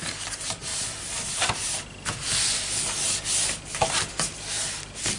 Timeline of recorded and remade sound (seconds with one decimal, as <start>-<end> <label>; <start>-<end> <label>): 0.0-0.7 recorded; 0.7-1.7 remade; 1.7-5.2 recorded